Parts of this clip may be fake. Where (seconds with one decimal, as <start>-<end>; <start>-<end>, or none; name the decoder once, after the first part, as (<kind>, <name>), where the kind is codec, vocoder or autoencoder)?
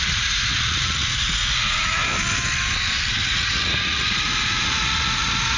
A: 0.0-2.0 (vocoder, Vocos); 3.1-5.6